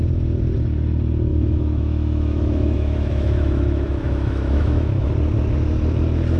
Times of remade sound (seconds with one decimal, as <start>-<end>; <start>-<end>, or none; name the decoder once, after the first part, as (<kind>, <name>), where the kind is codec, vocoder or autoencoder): 1.3-5.1 (autoencoder, DAC-VAE)